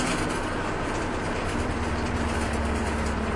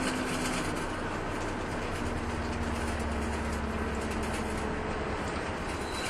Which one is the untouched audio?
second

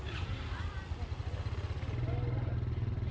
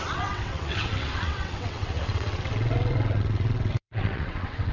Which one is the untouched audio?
first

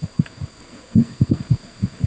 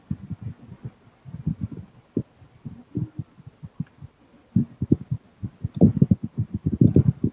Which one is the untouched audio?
second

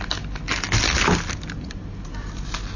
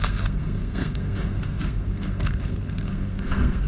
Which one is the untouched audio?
first